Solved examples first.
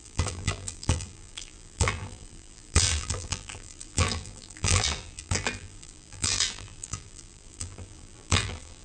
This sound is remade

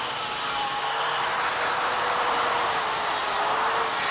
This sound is remade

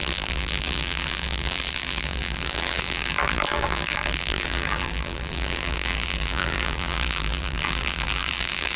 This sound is remade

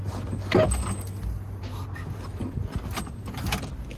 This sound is recorded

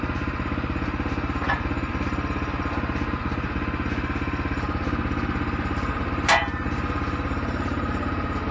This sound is recorded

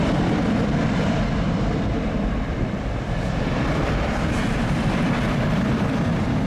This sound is remade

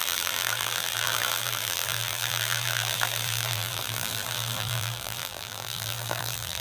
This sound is remade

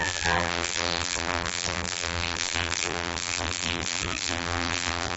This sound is remade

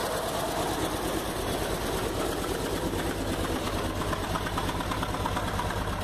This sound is recorded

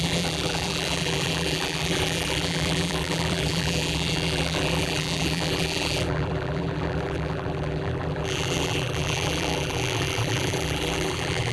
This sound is remade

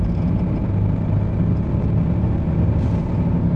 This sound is recorded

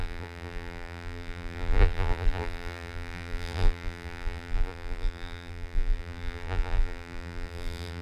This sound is remade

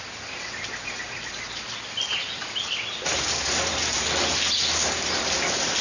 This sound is remade